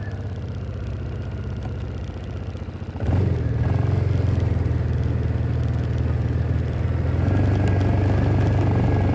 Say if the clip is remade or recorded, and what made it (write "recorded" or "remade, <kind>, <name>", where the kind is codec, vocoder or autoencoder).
recorded